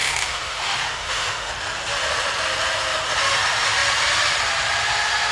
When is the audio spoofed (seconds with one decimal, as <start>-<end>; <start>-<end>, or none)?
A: 0.0-1.5

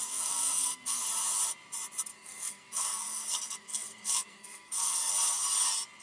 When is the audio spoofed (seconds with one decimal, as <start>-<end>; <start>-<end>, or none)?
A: 0.0-1.0; 2.1-5.1

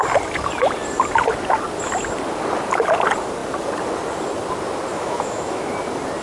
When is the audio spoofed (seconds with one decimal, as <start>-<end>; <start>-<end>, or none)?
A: 4.9-5.7

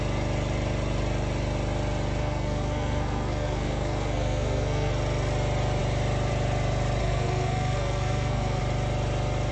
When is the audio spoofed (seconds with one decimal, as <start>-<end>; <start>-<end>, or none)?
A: 2.2-4.9; 7.0-8.6